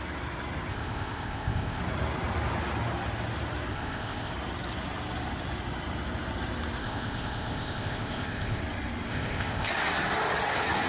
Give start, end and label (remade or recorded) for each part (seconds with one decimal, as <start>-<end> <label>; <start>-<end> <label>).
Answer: 0.0-0.7 recorded; 0.7-1.8 remade; 1.8-3.7 recorded; 3.7-4.3 remade; 4.3-6.8 recorded; 6.8-8.6 remade; 8.6-9.1 recorded; 9.1-9.7 remade; 9.7-10.9 recorded